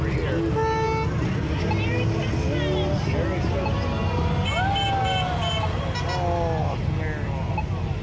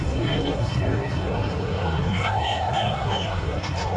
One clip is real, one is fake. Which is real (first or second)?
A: first